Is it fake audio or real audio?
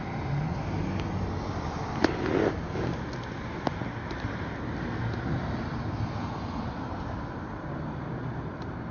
real